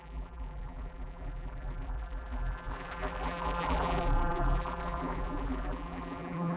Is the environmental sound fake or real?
fake